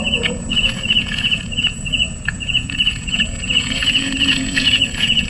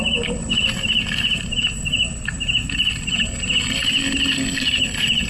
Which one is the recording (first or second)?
second